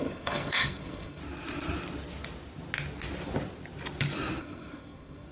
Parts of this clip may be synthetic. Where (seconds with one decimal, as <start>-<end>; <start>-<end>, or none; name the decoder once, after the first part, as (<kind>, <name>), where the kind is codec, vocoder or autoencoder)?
0.0-1.2 (codec, SNAC); 4.4-5.3